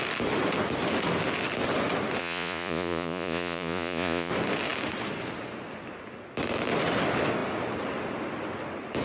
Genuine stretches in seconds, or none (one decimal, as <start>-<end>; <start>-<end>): 0.0-2.2; 4.3-9.0